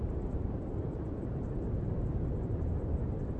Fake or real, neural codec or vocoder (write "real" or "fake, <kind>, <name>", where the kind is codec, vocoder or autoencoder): real